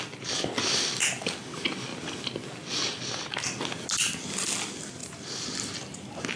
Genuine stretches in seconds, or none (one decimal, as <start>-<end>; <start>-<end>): 0.0-6.4